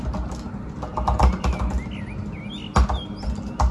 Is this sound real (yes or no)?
yes